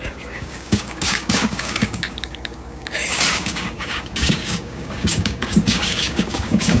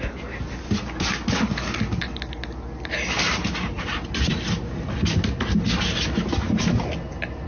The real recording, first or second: second